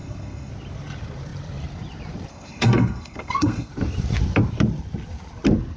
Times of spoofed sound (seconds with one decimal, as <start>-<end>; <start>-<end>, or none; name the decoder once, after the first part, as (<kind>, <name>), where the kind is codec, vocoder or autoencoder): 0.0-0.5 (codec, SNAC); 2.3-3.7